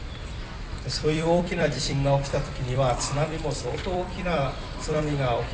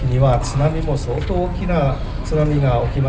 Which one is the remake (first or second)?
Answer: first